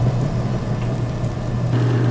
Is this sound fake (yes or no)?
no